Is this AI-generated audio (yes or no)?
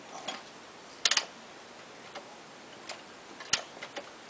no